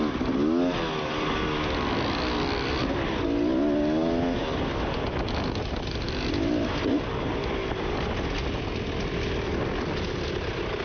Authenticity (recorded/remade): recorded